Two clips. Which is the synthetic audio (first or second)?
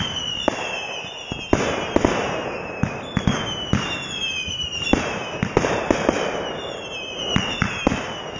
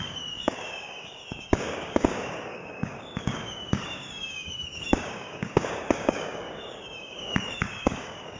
second